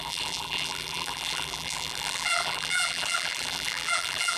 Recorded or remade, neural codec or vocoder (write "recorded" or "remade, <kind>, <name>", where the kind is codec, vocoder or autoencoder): remade, vocoder, BigVGAN v2